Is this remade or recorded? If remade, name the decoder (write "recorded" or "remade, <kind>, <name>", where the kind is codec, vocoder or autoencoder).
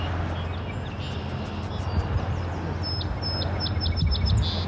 recorded